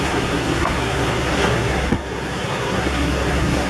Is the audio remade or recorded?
remade